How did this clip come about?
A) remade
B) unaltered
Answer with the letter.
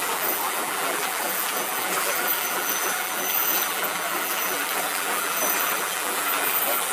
A